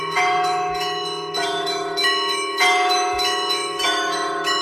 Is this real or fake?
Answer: fake